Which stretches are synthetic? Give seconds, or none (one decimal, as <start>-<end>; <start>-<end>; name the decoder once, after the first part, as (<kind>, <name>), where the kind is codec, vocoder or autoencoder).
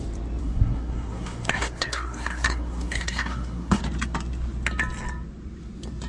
0.4-3.8 (codec, SNAC)